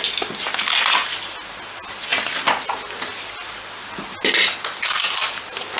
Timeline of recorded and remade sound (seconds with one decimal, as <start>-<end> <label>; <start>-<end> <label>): 0.0-5.8 recorded

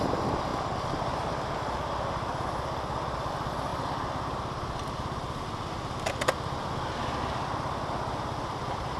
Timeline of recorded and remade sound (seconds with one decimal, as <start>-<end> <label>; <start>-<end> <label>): 0.0-9.0 recorded

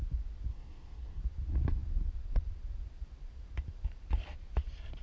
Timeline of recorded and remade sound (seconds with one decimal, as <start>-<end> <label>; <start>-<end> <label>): 0.0-0.5 recorded; 0.5-1.2 remade; 1.2-5.0 recorded

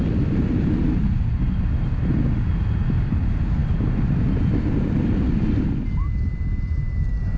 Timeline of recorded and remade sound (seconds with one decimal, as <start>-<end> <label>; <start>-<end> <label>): 0.0-7.4 recorded